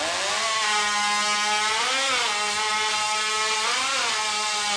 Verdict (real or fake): real